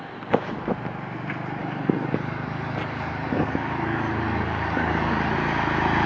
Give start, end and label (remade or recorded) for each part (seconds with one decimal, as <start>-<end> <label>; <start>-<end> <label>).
0.0-1.6 recorded; 1.6-5.3 remade; 5.3-6.1 recorded